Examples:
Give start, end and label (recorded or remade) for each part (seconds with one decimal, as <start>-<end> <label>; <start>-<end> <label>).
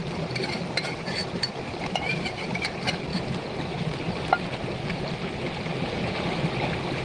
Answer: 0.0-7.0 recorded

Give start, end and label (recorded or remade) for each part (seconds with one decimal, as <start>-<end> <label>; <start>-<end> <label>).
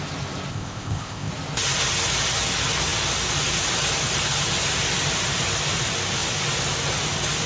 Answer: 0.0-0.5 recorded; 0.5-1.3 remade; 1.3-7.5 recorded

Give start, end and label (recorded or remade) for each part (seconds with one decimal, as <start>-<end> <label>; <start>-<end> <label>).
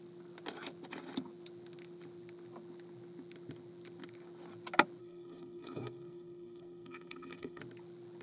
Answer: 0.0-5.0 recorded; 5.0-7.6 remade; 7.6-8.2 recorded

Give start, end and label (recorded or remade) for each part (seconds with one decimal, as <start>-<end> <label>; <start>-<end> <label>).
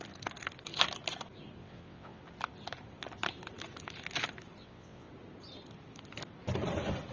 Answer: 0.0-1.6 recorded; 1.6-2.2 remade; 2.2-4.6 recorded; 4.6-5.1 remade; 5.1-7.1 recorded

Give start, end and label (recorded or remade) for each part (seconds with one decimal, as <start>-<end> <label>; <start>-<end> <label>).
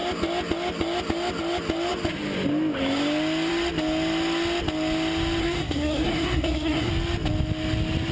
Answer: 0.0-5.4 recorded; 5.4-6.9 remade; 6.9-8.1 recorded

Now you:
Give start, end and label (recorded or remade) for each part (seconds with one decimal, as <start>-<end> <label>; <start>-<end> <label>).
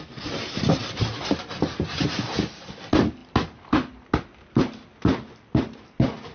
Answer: 0.0-6.3 recorded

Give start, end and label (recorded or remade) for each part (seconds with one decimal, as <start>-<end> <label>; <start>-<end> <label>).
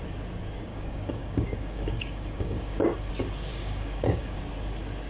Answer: 0.0-0.7 recorded; 0.7-3.1 remade; 3.1-3.5 recorded; 3.5-4.4 remade; 4.4-5.1 recorded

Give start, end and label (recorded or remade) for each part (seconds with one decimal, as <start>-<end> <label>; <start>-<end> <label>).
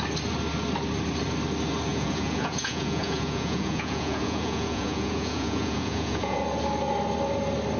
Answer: 0.0-1.9 recorded; 1.9-6.4 remade; 6.4-7.8 recorded